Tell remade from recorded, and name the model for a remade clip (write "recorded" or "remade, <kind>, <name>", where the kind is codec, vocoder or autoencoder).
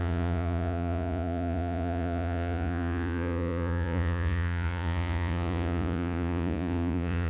remade, vocoder, Vocos